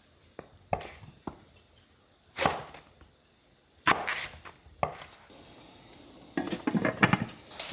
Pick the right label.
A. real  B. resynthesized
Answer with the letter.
A